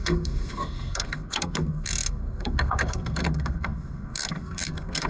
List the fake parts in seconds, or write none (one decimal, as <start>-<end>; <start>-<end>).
0.0-5.1